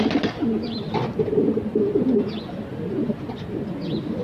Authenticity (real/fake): real